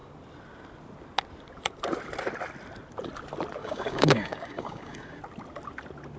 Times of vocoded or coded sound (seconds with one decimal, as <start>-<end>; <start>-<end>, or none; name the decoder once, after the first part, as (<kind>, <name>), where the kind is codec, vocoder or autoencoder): 3.6-5.2 (codec, DAC)